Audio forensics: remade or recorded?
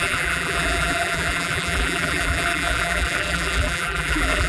remade